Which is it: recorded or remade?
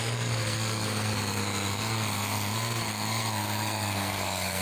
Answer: remade